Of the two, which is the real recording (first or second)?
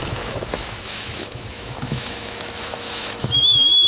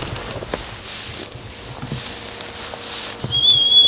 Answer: second